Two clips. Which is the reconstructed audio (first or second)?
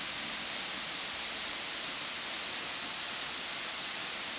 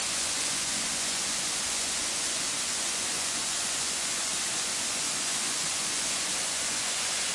second